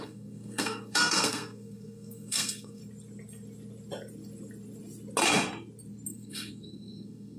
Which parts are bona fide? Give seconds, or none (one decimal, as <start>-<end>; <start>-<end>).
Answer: 2.8-6.1